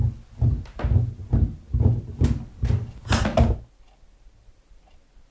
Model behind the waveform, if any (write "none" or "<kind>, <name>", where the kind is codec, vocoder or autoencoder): none